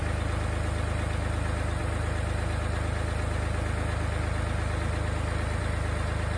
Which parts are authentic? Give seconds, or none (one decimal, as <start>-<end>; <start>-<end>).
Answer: 0.0-6.4

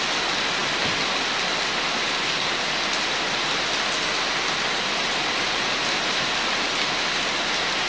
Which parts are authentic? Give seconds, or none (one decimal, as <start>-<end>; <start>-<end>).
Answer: 0.0-7.9